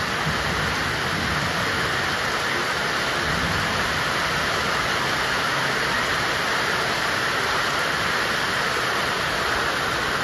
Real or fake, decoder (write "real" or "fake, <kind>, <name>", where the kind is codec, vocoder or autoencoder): real